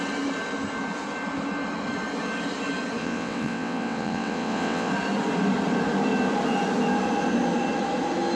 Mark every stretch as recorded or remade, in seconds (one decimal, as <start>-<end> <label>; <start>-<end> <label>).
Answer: 0.0-3.0 recorded; 3.0-4.9 remade; 4.9-8.4 recorded